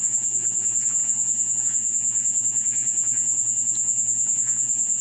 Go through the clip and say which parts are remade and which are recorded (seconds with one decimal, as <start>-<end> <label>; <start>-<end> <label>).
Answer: 0.0-5.0 remade